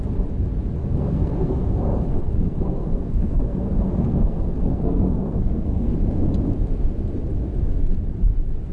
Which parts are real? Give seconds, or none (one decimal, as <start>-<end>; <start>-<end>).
0.0-0.8; 5.9-8.7